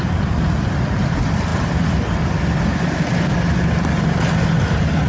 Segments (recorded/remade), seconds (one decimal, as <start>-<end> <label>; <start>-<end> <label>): 0.0-5.1 recorded